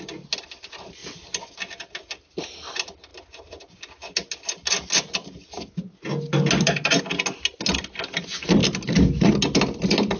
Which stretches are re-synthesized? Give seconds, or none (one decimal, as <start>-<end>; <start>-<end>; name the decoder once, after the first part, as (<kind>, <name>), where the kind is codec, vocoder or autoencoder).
none